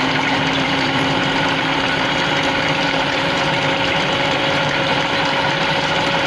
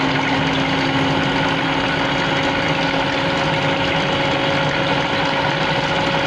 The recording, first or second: second